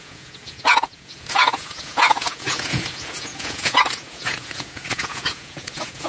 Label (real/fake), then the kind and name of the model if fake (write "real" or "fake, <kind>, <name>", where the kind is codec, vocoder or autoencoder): fake, vocoder, Vocos